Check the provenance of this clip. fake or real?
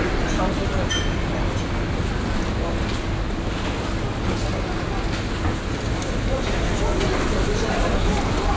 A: real